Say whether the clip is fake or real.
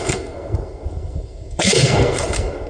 fake